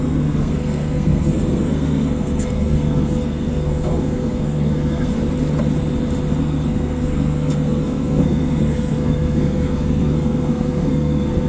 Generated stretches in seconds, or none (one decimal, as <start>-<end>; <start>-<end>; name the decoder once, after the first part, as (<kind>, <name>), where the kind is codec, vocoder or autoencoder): 0.0-5.1 (codec, SNAC); 6.4-11.5